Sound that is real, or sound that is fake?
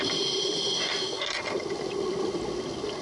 real